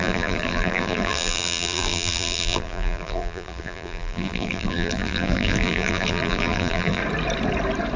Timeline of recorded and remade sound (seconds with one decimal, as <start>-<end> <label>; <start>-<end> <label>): 0.0-7.0 remade; 7.0-8.0 recorded